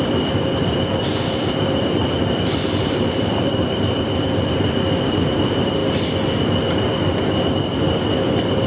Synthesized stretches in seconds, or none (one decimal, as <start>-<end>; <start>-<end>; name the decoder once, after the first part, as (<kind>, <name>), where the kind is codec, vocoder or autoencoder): 0.0-5.8 (vocoder, BigVGAN v2); 8.0-8.7